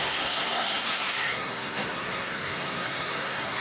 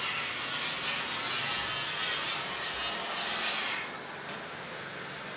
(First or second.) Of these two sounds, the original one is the second